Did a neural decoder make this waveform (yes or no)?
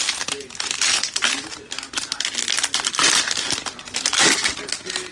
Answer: no